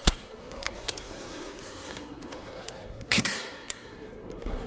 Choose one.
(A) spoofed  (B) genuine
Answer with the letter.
A